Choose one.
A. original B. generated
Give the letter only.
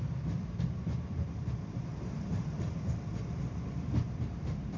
B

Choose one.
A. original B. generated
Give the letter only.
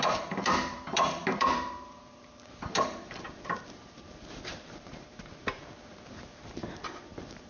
B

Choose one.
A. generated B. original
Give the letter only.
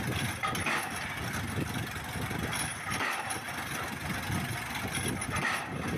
B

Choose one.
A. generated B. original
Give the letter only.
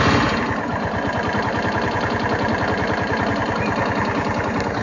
B